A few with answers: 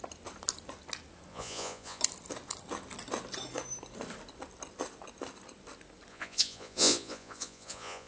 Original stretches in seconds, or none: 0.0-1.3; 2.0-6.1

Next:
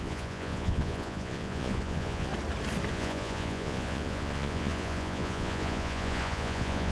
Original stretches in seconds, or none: 2.3-2.9

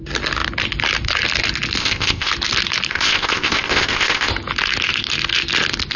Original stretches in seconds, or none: 0.0-1.8; 2.3-2.9; 4.3-6.0

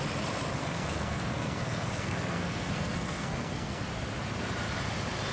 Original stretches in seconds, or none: 0.0-0.6; 3.8-5.3

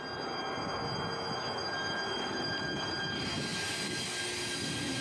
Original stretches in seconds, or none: 0.0-5.0

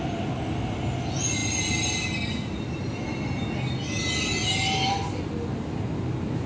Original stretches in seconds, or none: 0.0-6.5

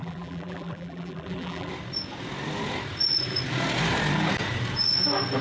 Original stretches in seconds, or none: 1.7-5.4